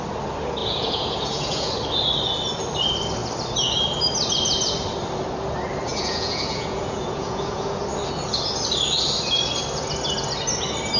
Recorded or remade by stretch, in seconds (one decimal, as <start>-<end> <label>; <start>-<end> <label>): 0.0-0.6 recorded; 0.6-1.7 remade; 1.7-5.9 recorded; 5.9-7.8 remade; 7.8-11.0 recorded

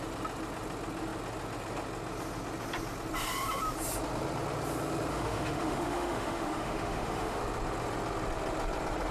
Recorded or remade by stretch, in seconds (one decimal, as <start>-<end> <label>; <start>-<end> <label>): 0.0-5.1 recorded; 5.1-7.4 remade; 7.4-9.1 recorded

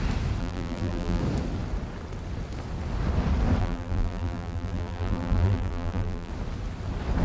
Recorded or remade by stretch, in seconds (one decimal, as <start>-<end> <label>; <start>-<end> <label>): 0.0-0.4 recorded; 0.4-1.2 remade; 1.2-3.6 recorded; 3.6-6.3 remade; 6.3-7.2 recorded

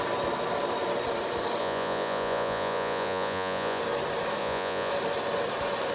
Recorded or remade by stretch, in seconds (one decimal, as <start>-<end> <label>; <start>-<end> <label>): 0.0-1.6 recorded; 1.6-3.8 remade; 3.8-4.4 recorded; 4.4-4.9 remade; 4.9-5.9 recorded